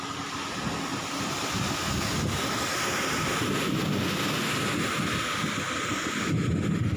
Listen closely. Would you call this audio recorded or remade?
recorded